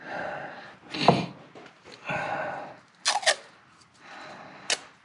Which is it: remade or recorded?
recorded